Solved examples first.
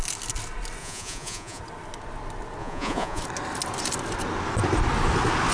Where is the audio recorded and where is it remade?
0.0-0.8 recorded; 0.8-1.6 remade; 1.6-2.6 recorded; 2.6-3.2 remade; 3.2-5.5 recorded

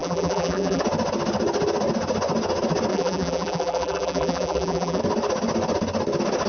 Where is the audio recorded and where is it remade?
0.0-0.8 remade; 0.8-2.9 recorded; 2.9-5.0 remade; 5.0-6.5 recorded